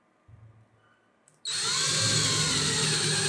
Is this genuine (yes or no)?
yes